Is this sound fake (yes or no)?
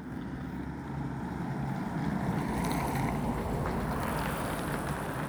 yes